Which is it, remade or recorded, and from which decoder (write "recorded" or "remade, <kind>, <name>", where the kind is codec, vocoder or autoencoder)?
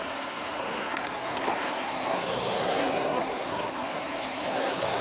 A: remade, codec, SNAC